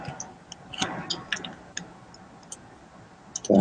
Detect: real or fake real